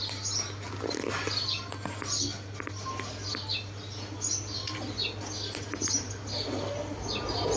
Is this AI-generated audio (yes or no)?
no